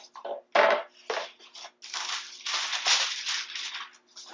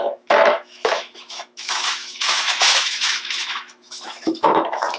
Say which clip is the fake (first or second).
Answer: second